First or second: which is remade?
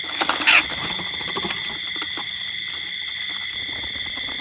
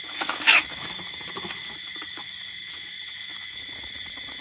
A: second